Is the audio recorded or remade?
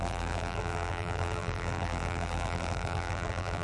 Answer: remade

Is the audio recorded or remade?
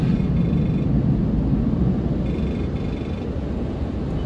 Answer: recorded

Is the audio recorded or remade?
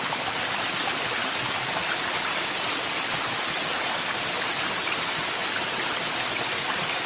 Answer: recorded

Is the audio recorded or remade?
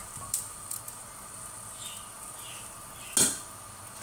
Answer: recorded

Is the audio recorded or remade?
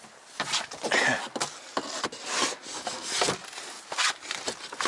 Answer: recorded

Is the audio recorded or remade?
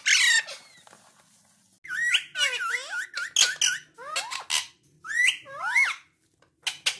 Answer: recorded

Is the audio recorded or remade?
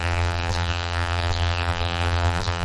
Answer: remade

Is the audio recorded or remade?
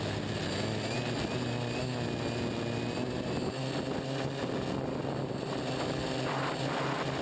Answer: recorded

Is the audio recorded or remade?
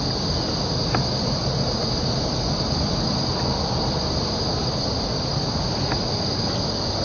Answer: recorded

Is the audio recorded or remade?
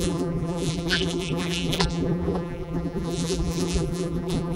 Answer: remade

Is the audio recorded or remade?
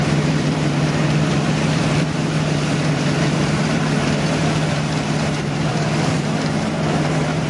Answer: remade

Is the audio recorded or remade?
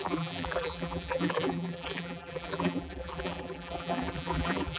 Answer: remade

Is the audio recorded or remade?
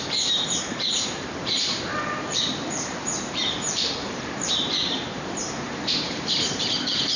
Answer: remade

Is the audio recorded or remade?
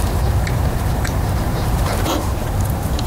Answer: remade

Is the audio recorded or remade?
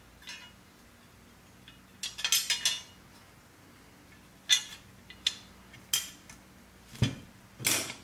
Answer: recorded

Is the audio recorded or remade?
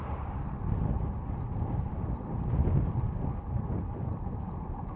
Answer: remade